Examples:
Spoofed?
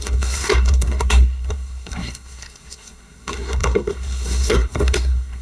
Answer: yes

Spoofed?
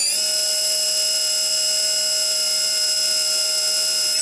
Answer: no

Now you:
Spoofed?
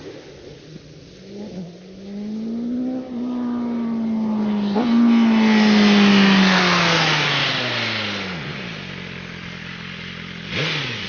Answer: no